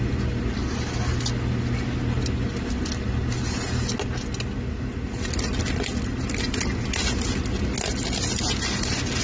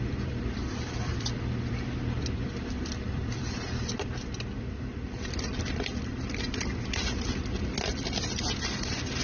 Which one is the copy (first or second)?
second